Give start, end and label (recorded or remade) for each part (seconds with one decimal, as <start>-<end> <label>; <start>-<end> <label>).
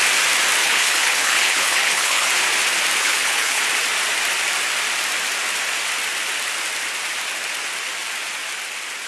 0.0-0.6 recorded; 0.6-2.3 remade; 2.3-3.0 recorded; 3.0-3.6 remade; 3.6-9.1 recorded